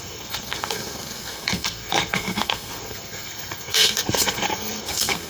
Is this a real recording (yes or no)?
no